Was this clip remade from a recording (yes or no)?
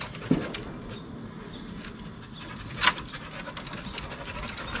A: no